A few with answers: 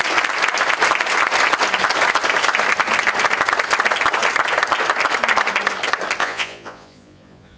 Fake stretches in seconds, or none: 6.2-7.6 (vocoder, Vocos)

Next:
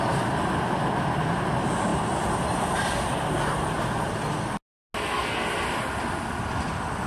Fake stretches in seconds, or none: none

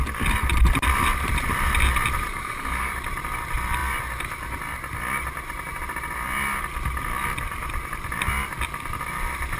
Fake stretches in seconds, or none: 2.3-2.9 (codec, DAC)

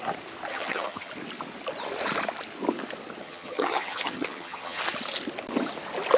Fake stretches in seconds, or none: 0.5-1.1 (vocoder, HiFi-GAN); 3.2-4.8

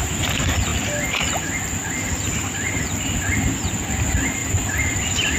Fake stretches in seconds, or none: 4.4-5.4 (vocoder, BigVGAN v2)

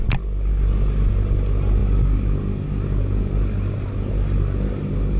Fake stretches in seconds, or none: none

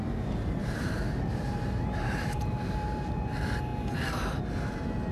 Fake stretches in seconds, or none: 0.0-3.7 (vocoder, BigVGAN v2); 4.4-5.1

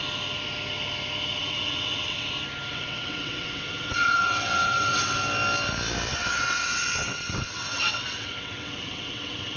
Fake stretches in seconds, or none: 1.4-2.3 (vocoder, WaveNeXt); 2.7-5.1; 6.1-9.6